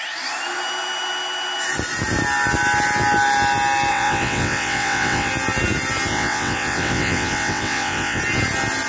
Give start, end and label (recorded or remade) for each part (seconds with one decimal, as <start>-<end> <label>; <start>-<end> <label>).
0.0-3.9 recorded; 3.9-5.3 remade; 5.3-6.1 recorded; 6.1-8.2 remade; 8.2-8.9 recorded